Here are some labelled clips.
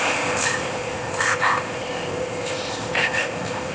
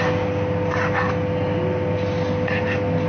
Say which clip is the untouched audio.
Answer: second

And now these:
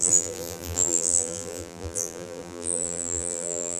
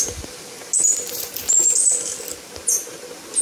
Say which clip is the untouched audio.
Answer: second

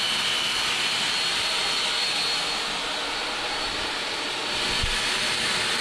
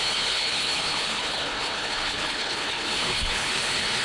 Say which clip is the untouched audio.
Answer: first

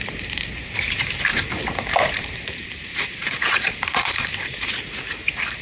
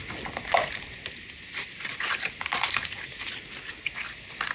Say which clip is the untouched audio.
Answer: second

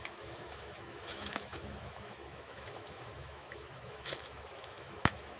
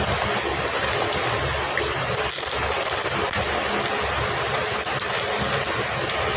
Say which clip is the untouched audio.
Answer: second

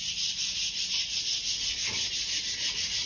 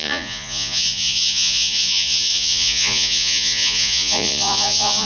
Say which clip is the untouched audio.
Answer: first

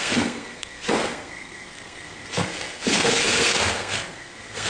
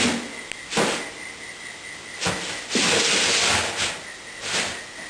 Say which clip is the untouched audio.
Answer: second